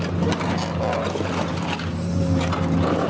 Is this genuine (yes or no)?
yes